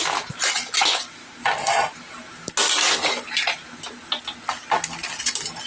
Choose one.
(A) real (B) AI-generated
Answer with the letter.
A